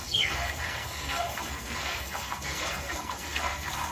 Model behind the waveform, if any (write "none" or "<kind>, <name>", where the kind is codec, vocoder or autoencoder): codec, SNAC